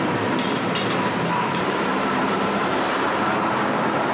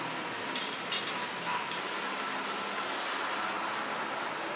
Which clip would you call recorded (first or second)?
second